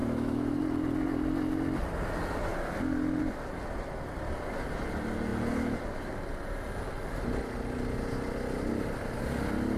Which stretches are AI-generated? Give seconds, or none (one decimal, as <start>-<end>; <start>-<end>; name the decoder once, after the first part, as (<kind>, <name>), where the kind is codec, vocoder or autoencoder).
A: 0.0-0.6 (autoencoder, DAC-VAE)